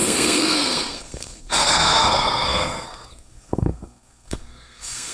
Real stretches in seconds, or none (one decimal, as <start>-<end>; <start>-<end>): none